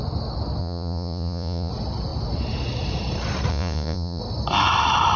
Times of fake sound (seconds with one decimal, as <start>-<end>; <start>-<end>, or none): 0.6-1.7; 3.5-4.2